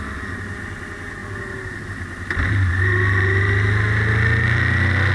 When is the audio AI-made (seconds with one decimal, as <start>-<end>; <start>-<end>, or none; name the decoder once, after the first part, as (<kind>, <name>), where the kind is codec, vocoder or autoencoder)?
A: none